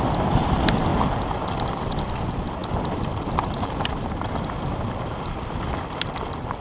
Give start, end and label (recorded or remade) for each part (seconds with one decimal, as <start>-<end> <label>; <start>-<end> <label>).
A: 0.0-6.6 recorded